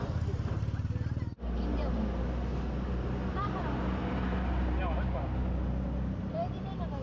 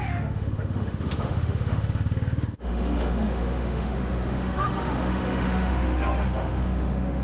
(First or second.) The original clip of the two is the first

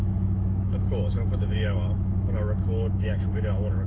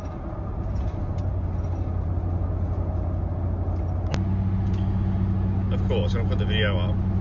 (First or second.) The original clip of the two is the second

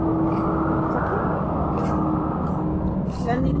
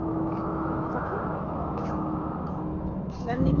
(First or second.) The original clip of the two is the first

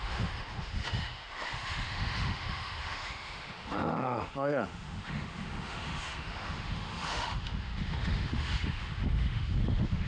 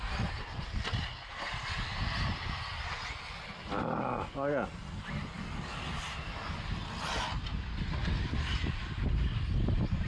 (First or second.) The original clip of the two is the second